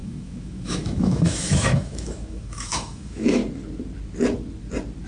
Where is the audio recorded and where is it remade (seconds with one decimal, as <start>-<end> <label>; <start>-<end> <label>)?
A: 0.0-3.4 remade; 3.4-5.1 recorded